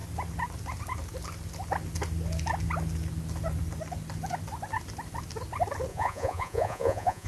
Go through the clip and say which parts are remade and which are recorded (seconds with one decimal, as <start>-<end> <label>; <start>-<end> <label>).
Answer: 0.0-5.9 recorded; 5.9-7.3 remade